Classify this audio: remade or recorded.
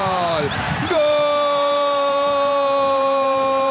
remade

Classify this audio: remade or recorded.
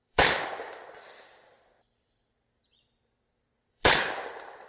remade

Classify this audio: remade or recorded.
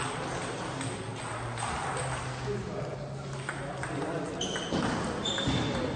recorded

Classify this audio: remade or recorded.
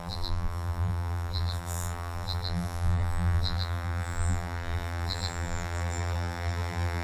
remade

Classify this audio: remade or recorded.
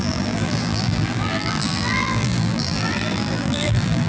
remade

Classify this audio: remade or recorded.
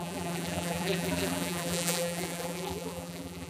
remade